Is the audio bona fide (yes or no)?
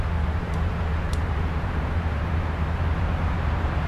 no